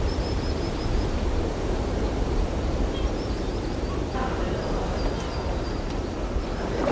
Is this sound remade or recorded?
remade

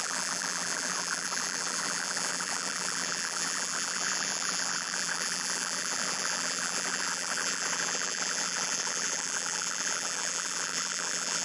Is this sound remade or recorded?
remade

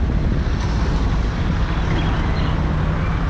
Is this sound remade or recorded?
recorded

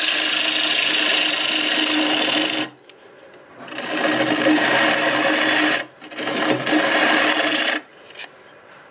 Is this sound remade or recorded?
recorded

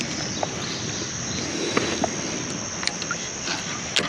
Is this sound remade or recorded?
recorded